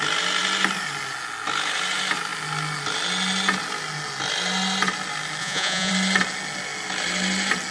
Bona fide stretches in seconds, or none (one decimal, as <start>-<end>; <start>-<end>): 0.0-5.4; 5.9-7.7

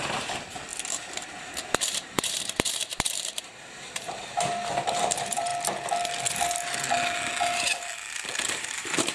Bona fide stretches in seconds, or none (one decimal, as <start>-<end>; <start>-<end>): 5.5-8.5

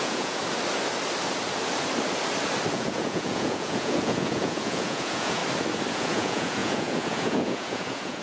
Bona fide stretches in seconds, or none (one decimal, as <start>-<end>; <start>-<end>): 0.4-2.7; 5.4-5.9

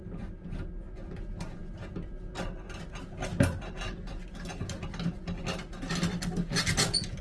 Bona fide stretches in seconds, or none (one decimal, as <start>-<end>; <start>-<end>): 0.0-7.2

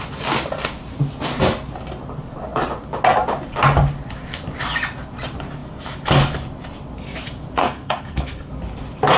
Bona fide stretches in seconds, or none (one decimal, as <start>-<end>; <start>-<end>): 0.0-7.6; 8.5-9.2

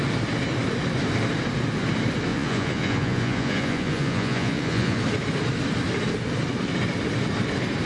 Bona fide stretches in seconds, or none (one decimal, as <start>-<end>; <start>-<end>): 0.0-2.3; 5.0-7.9

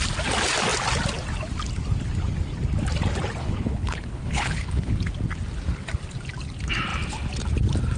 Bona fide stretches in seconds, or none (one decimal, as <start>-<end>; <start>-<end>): 0.0-3.4; 4.9-8.0